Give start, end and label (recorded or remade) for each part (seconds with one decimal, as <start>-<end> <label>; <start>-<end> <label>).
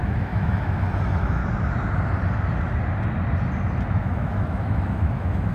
0.0-1.4 remade; 1.4-4.0 recorded; 4.0-5.5 remade